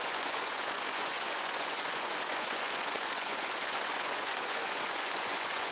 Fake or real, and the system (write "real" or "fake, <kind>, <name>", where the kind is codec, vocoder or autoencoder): fake, vocoder, Vocos